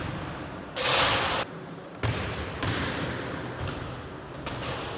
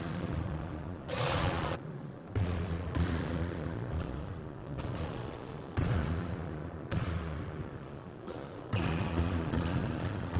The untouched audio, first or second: first